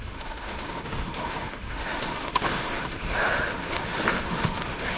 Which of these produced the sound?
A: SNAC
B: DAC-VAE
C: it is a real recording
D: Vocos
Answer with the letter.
B